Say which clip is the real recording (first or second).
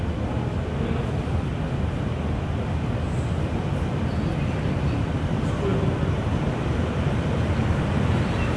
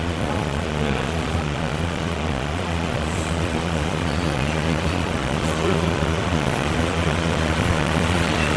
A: first